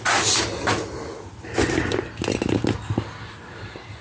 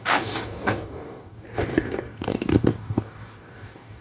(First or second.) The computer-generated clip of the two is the second